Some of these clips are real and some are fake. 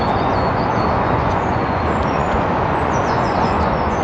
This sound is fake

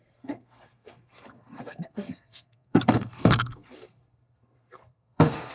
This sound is fake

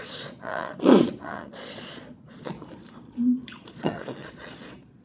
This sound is fake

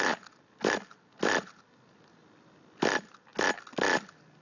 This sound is real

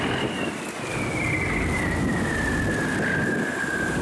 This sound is real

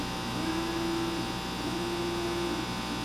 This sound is real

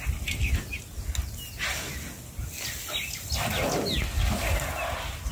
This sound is real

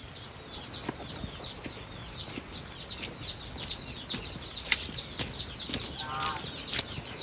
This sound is real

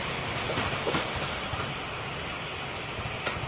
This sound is real